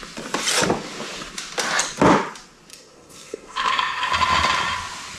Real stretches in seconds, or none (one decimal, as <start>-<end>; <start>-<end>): 0.0-2.7; 4.1-5.2